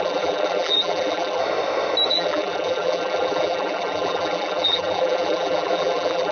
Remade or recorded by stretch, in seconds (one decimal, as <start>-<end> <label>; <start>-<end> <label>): 0.0-1.4 remade; 1.4-2.1 recorded; 2.1-6.3 remade